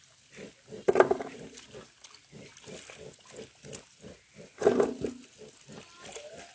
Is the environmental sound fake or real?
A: real